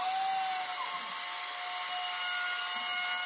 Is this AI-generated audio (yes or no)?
no